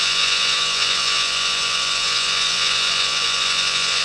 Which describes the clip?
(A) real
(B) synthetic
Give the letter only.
B